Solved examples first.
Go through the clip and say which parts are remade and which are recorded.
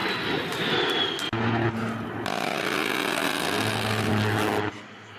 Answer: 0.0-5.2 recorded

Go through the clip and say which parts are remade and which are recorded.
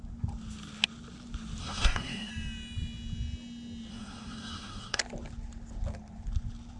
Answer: 0.0-1.6 recorded; 1.6-2.3 remade; 2.3-3.9 recorded; 3.9-5.0 remade; 5.0-6.8 recorded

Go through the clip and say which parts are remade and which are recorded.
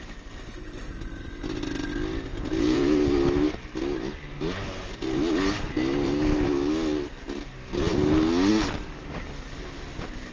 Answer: 0.0-2.3 recorded; 2.3-3.0 remade; 3.0-10.3 recorded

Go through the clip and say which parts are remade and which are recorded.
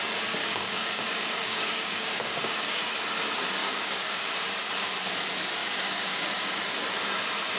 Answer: 0.0-0.4 recorded; 0.4-2.8 remade; 2.8-3.6 recorded; 3.6-4.3 remade; 4.3-5.6 recorded; 5.6-6.6 remade; 6.6-7.6 recorded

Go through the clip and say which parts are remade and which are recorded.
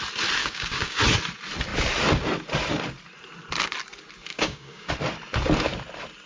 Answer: 0.0-0.4 recorded; 0.4-1.0 remade; 1.0-4.3 recorded; 4.3-4.9 remade; 4.9-6.3 recorded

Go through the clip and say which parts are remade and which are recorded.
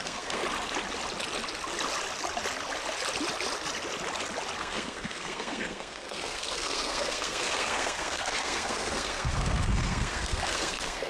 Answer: 0.0-0.4 remade; 0.4-4.6 recorded; 4.6-11.1 remade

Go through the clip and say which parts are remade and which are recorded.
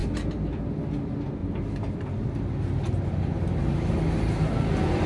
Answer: 0.0-5.1 recorded